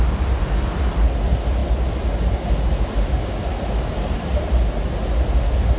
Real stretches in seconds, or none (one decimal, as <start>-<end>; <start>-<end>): 0.0-5.8